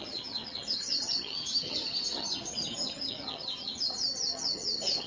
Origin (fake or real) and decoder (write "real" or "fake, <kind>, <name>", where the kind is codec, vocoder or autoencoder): fake, vocoder, HiFi-GAN